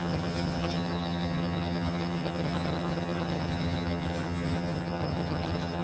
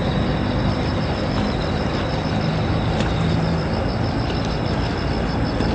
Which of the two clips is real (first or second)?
second